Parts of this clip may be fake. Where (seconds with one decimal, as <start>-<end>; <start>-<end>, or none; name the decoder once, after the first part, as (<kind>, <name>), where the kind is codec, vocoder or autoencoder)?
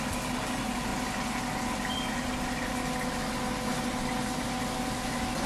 none